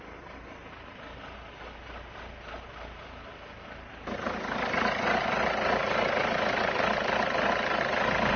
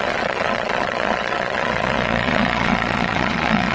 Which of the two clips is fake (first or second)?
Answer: second